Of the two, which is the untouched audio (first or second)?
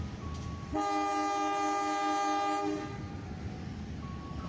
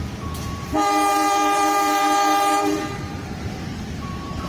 first